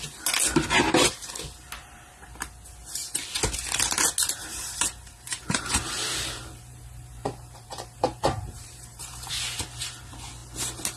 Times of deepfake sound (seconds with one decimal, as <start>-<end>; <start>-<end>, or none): 4.4-9.3